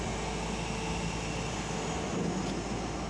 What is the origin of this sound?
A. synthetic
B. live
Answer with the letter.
B